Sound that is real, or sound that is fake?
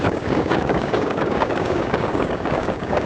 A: fake